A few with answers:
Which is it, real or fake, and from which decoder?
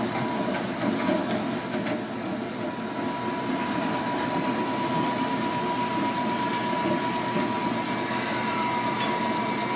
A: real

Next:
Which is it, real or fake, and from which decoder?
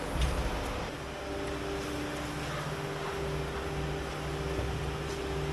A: real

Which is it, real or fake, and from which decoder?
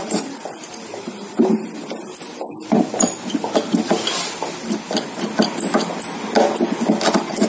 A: real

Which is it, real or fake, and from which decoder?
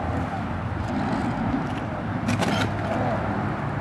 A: real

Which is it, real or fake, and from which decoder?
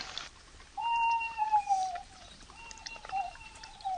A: fake, vocoder, BigVGAN v2